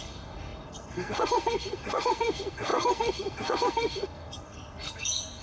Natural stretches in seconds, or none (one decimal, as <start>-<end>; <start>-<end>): none